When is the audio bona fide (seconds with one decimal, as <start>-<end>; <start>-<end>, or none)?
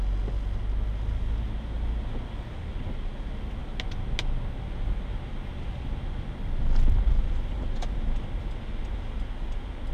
0.0-9.9